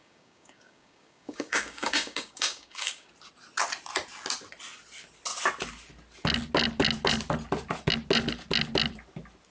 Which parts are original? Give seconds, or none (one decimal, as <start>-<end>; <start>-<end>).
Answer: 3.1-9.5